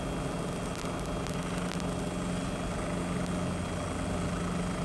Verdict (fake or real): real